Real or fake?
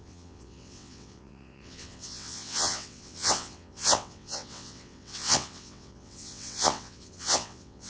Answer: fake